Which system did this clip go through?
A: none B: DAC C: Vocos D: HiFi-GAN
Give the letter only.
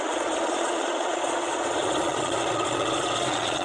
C